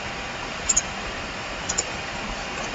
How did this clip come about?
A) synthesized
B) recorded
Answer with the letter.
B